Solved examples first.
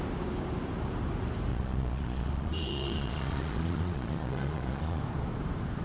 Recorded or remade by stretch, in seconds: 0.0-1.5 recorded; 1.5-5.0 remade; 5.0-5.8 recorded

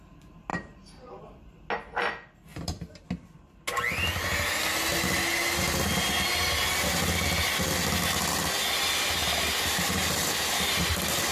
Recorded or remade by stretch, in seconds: 0.0-0.5 recorded; 0.5-1.2 remade; 1.2-2.5 recorded; 2.5-3.1 remade; 3.1-9.2 recorded; 9.2-10.8 remade; 10.8-11.3 recorded

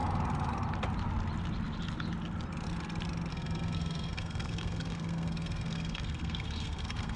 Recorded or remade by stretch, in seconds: 0.0-3.3 recorded; 3.3-7.2 remade

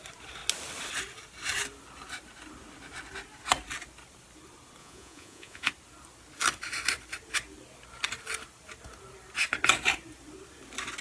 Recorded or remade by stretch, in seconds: 0.0-4.8 recorded; 4.8-5.7 remade; 5.7-11.0 recorded

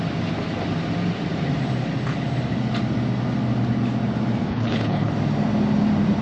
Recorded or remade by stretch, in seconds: 0.0-4.5 recorded; 4.5-5.1 remade; 5.1-6.2 recorded

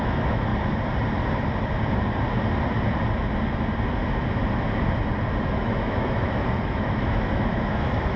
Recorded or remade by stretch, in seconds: 0.0-0.5 remade; 0.5-5.4 recorded; 5.4-8.2 remade